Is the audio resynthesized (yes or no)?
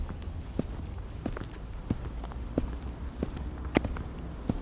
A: no